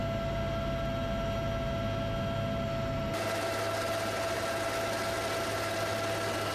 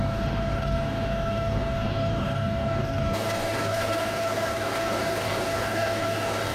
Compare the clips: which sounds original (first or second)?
first